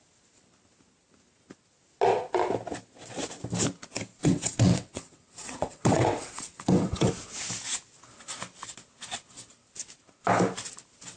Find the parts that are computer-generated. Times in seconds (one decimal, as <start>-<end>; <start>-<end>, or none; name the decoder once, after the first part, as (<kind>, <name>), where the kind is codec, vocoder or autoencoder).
4.2-7.1 (vocoder, WaveNeXt)